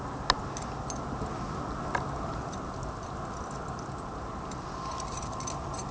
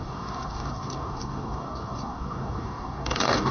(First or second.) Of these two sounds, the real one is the first